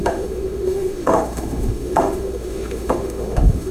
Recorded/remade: remade